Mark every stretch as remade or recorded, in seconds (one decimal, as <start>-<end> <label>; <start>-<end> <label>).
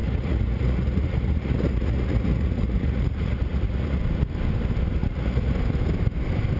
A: 0.0-4.0 remade; 4.0-5.0 recorded; 5.0-5.5 remade; 5.5-6.6 recorded